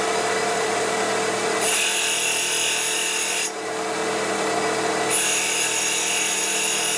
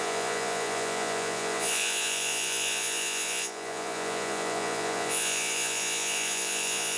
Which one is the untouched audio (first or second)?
first